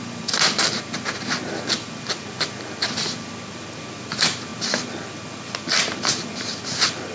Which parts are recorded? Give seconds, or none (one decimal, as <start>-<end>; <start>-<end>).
0.0-7.1